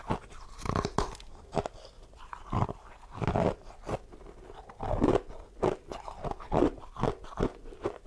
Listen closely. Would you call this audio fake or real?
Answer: real